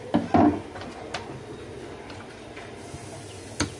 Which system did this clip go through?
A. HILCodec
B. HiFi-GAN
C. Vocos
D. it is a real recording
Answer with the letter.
D